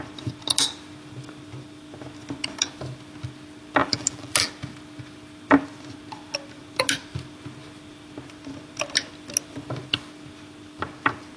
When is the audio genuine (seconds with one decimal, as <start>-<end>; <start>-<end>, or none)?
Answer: 0.0-3.8; 4.5-11.4